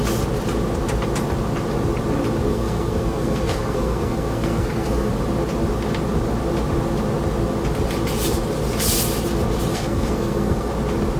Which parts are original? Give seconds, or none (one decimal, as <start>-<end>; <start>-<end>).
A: 0.0-2.5; 5.1-9.7; 10.7-11.2

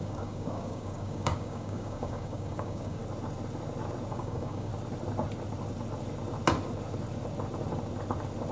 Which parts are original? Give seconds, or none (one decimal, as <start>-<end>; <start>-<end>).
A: 3.0-4.1; 4.7-8.5

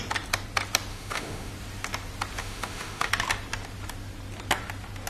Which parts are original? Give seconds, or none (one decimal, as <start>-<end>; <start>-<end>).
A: 0.0-0.9; 1.5-2.4; 3.1-5.1

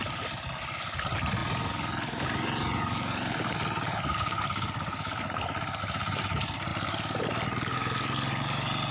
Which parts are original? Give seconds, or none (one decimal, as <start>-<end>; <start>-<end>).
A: 0.0-8.9

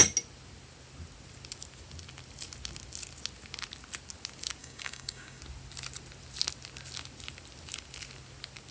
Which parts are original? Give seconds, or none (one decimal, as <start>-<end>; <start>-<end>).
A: 0.0-4.6; 5.4-8.7